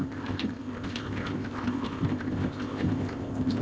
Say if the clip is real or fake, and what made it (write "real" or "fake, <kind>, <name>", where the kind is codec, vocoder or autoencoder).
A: fake, codec, ZipCodec